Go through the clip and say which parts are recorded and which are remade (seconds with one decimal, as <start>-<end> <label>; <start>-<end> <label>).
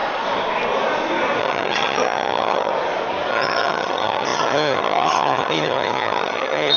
0.0-1.4 recorded; 1.4-2.7 remade; 2.7-3.3 recorded; 3.3-6.8 remade